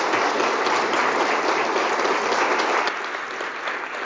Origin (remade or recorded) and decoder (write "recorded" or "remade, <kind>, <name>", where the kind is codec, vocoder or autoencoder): recorded